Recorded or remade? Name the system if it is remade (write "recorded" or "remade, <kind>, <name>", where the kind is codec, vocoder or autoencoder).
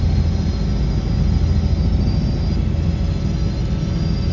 recorded